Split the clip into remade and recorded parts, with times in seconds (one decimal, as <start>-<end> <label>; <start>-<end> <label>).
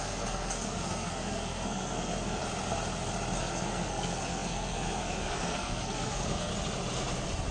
0.0-2.4 remade; 2.4-3.4 recorded; 3.4-6.5 remade; 6.5-7.5 recorded